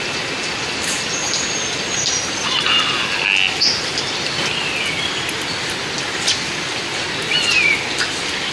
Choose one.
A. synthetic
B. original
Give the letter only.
B